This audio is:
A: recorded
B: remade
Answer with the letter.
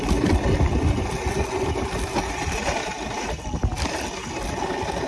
A